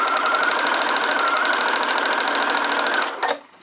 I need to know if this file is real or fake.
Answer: real